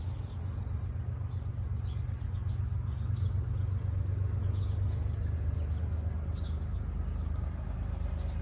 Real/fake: real